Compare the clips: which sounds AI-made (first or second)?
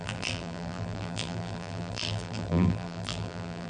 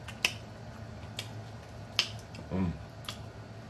first